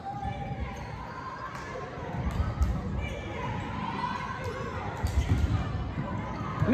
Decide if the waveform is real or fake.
real